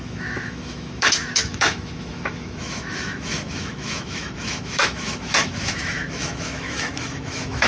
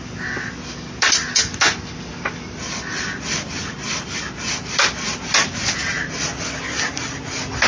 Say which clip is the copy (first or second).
first